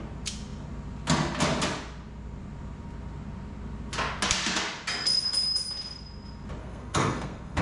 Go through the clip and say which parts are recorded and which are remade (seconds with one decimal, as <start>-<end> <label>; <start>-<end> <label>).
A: 0.0-6.6 recorded; 6.6-7.6 remade